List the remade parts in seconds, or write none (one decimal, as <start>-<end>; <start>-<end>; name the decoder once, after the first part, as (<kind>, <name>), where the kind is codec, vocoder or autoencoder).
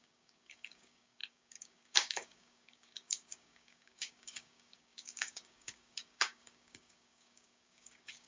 0.0-8.3 (codec, DAC)